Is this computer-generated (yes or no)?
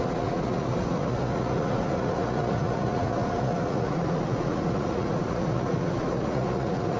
yes